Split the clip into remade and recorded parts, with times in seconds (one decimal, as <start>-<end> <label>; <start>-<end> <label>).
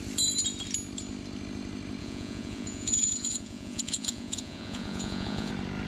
0.0-2.0 recorded; 2.0-5.5 remade; 5.5-5.9 recorded